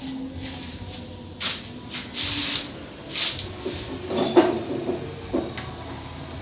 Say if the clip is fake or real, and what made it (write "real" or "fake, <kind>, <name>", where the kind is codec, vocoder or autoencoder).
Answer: real